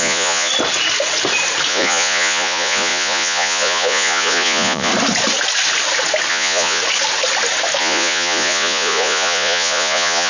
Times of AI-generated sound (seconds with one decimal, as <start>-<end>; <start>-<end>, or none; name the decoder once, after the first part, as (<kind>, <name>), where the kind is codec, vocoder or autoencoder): 0.0-0.5 (vocoder, Vocos); 1.7-4.9; 6.3-6.8; 7.8-10.3